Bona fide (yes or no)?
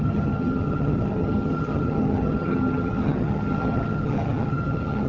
no